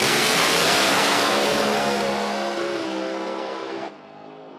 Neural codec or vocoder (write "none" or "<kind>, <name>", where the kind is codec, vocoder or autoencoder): codec, SNAC